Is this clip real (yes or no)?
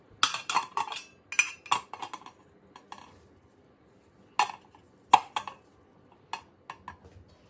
yes